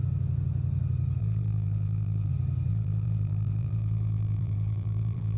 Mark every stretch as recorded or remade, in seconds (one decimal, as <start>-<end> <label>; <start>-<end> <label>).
0.0-1.2 recorded; 1.2-2.3 remade; 2.3-2.7 recorded; 2.7-5.4 remade